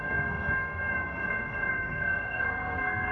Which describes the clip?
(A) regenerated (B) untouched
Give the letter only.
A